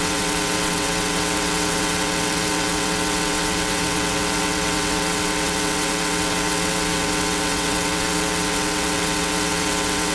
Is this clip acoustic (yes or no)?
no